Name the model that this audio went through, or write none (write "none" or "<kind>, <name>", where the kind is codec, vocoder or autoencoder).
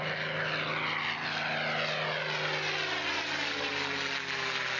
none